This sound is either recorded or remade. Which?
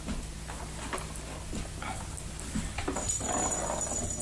recorded